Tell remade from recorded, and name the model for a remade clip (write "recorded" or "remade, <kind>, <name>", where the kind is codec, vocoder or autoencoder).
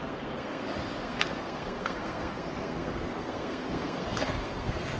remade, codec, SNAC